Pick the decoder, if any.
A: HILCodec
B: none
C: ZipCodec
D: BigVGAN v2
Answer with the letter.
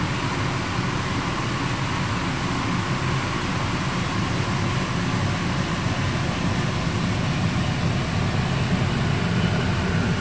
B